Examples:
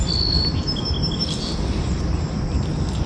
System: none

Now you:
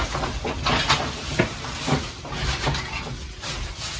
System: none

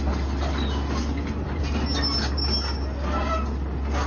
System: none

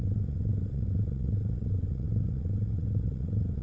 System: vocoder, WaveNeXt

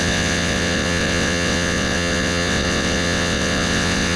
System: vocoder, WaveNeXt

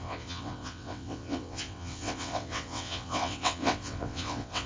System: vocoder, WaveNeXt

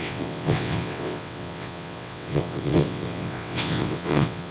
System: vocoder, WaveNeXt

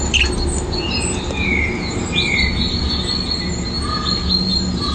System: none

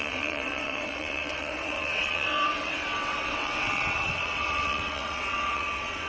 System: vocoder, WaveNeXt